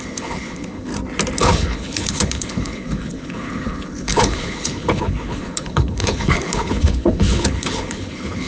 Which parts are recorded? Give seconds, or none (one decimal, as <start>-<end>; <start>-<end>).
0.9-1.4